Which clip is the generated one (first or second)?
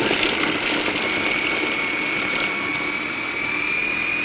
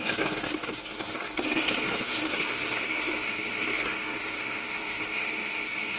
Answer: second